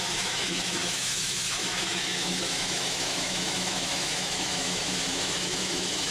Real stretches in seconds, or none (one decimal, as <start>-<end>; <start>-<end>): none